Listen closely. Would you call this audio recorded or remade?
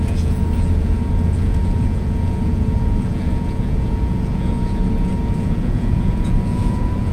remade